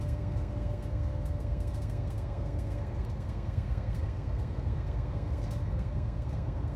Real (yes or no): no